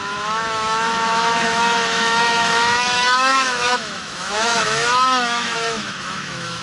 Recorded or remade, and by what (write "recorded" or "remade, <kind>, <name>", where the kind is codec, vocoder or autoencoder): remade, autoencoder, DAC-VAE